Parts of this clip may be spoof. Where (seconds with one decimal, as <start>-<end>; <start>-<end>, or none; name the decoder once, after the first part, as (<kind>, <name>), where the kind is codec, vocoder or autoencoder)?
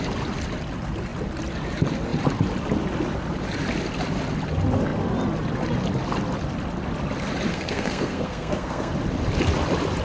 7.5-8.9 (codec, SNAC)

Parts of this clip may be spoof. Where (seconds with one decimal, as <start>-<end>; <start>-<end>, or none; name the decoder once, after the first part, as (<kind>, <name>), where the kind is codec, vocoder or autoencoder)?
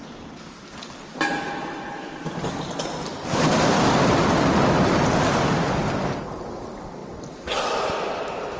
none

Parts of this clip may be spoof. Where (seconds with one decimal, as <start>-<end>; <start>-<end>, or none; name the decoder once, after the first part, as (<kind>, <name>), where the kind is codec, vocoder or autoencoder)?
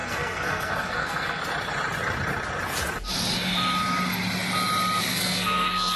0.0-1.4 (codec, SNAC); 5.0-6.0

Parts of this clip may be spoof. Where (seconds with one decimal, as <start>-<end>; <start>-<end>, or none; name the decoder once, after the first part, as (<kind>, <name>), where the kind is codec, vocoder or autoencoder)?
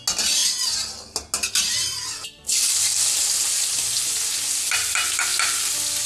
none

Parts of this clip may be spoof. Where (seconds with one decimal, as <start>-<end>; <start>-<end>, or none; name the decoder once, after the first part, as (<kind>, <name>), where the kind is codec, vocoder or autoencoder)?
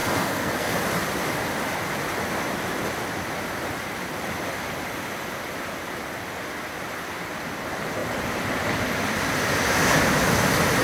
0.0-0.7 (codec, SNAC)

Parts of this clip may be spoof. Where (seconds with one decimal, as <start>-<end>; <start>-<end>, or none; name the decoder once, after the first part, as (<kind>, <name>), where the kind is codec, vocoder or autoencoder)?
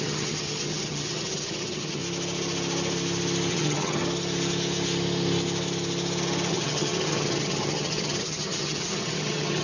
0.0-2.0 (vocoder, HiFi-GAN); 3.5-4.0; 6.5-9.6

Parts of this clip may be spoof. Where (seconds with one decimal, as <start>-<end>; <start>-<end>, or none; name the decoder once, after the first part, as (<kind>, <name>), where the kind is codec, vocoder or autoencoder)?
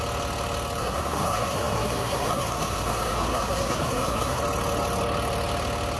0.8-4.4 (codec, SNAC)